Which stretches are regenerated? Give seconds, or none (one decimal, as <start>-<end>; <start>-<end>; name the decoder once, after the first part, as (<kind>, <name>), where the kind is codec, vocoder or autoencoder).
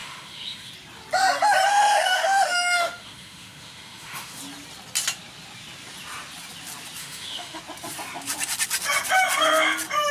0.0-0.7 (autoencoder, DAC-VAE); 1.7-4.4; 7.0-7.6